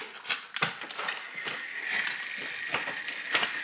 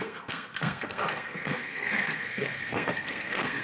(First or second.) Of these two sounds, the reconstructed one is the second